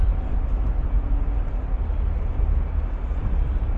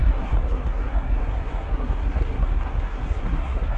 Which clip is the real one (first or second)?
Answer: first